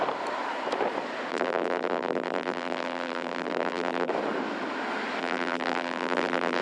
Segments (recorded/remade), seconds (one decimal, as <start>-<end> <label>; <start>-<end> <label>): 0.0-1.3 recorded; 1.3-4.1 remade; 4.1-5.2 recorded; 5.2-6.6 remade